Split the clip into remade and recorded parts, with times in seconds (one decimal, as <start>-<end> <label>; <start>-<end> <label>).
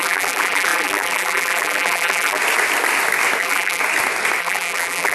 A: 0.0-2.4 remade; 2.4-3.4 recorded; 3.4-3.8 remade; 3.8-4.4 recorded; 4.4-5.1 remade